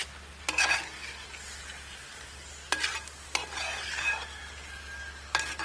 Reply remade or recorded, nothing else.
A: recorded